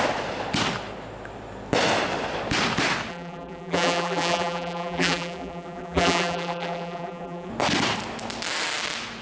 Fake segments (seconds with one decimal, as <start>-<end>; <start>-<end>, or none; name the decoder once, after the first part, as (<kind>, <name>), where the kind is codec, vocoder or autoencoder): 3.1-7.5 (vocoder, BigVGAN v2)